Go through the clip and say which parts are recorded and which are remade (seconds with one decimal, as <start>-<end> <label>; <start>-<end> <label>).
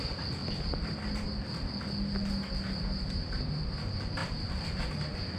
0.0-4.2 recorded; 4.2-4.8 remade; 4.8-5.4 recorded